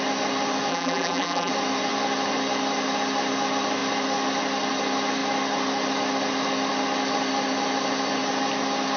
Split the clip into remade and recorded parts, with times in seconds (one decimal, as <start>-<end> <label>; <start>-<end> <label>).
0.0-0.7 recorded; 0.7-1.5 remade; 1.5-9.0 recorded